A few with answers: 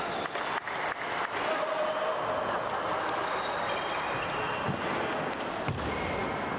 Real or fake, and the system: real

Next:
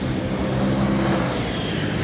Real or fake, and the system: real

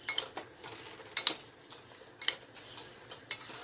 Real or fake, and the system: real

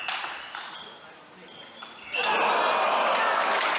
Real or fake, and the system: real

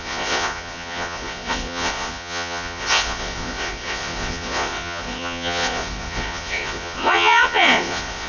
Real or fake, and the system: fake, vocoder, Vocos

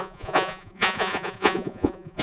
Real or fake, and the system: fake, vocoder, Vocos